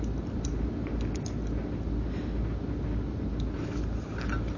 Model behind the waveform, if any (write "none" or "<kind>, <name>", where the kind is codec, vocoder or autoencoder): none